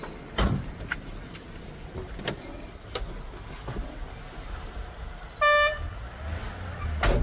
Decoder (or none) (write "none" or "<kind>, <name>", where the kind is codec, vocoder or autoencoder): none